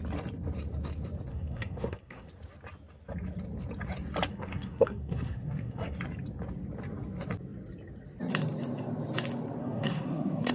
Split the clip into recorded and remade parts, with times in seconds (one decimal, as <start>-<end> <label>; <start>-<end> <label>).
0.0-1.3 recorded; 1.3-2.3 remade; 2.3-4.3 recorded; 4.3-6.0 remade; 6.0-9.6 recorded; 9.6-10.5 remade